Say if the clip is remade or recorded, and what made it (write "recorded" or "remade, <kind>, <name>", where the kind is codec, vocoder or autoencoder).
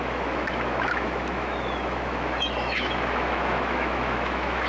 remade, autoencoder, DAC-VAE